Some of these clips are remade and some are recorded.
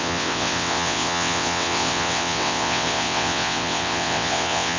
remade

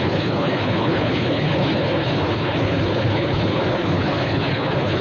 remade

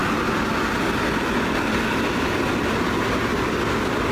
recorded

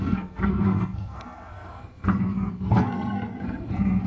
remade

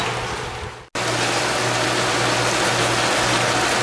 recorded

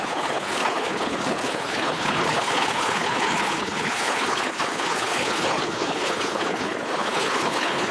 remade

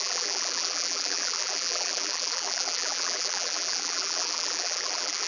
remade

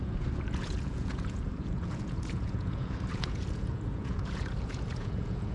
remade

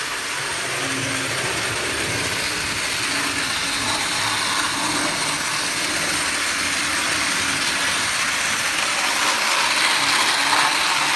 recorded